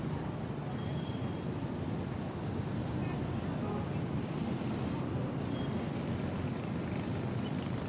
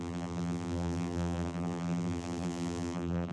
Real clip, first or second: first